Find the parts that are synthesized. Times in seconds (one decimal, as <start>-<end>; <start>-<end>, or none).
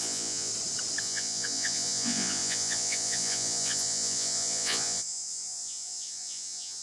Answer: 0.0-0.5; 1.0-6.8